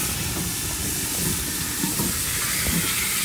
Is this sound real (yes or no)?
yes